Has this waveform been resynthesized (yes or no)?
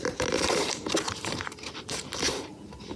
yes